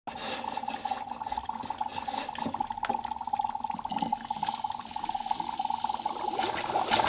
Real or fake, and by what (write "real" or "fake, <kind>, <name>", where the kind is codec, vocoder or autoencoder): real